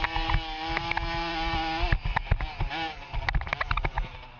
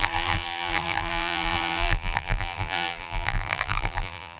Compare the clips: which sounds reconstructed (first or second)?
second